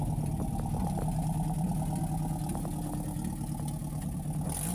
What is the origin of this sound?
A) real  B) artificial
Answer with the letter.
A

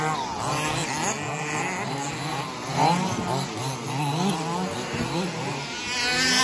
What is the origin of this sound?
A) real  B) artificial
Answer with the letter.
A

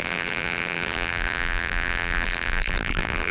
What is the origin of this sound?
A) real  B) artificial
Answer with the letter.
B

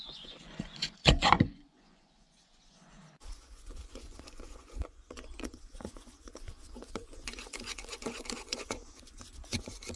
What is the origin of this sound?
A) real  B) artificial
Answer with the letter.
B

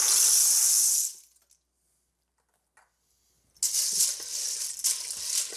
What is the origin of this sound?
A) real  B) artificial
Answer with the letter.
A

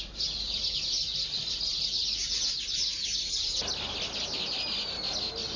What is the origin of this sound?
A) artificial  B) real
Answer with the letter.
B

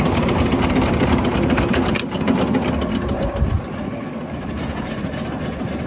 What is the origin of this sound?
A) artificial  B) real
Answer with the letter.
B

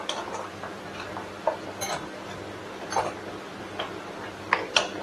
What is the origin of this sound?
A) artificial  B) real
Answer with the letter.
B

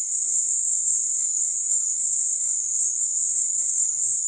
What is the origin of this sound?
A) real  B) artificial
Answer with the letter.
B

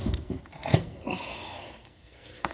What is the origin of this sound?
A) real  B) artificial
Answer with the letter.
B